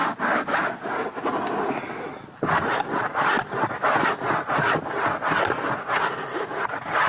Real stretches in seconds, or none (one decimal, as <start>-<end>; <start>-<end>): 0.0-7.1